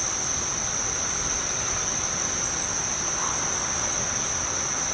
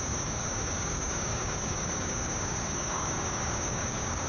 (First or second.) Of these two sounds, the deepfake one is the second